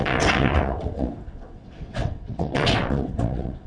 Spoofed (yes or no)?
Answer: yes